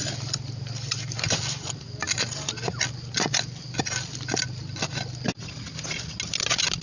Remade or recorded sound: recorded